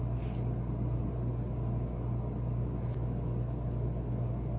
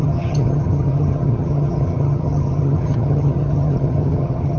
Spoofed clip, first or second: second